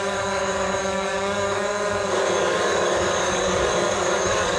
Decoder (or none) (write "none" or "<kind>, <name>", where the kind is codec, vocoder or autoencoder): codec, DAC